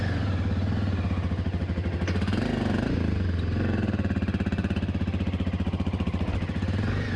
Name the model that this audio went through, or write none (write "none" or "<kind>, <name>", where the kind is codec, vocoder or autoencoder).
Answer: none